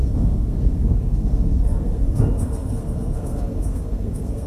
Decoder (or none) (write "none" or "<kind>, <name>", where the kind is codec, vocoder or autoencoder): codec, SNAC